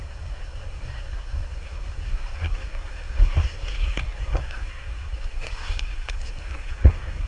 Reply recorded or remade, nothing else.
remade